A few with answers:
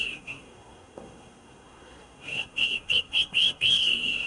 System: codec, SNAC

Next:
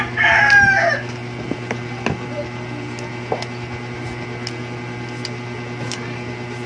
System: none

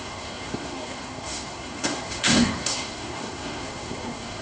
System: codec, SNAC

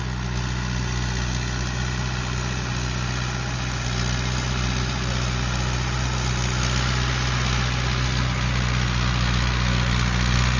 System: none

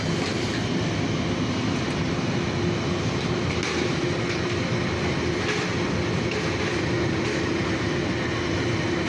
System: none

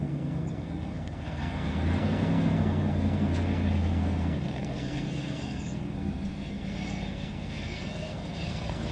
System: codec, SNAC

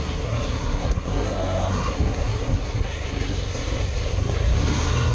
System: codec, SNAC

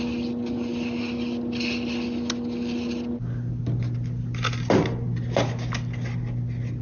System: none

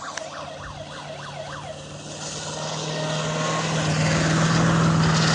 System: none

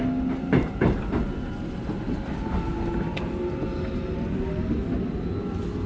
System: none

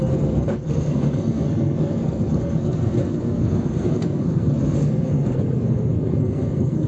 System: codec, SNAC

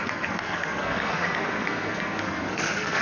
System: codec, SNAC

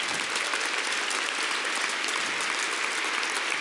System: none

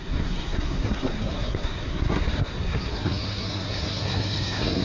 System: codec, SNAC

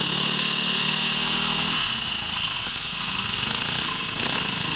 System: codec, SNAC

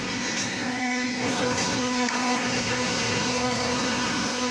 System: codec, SNAC